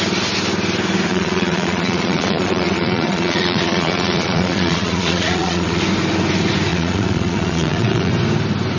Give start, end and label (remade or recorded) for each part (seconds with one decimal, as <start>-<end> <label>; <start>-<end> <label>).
0.0-1.1 recorded; 1.1-5.8 remade; 5.8-6.7 recorded; 6.7-8.1 remade; 8.1-8.8 recorded

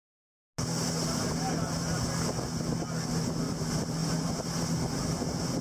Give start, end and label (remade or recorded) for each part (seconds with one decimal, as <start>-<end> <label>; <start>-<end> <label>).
0.0-5.6 recorded

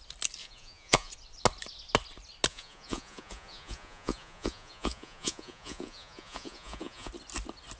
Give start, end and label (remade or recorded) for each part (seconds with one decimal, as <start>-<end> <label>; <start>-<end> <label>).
0.0-0.4 recorded; 0.4-1.1 remade; 1.1-2.5 recorded; 2.5-7.1 remade; 7.1-7.8 recorded

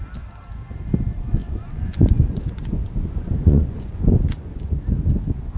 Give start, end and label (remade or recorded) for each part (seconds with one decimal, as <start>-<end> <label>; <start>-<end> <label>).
0.0-1.4 recorded; 1.4-4.8 remade; 4.8-5.6 recorded